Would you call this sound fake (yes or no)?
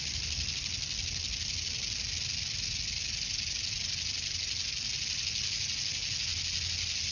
no